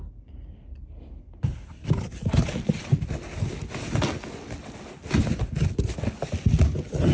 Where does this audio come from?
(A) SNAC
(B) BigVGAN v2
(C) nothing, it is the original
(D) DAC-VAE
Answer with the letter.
C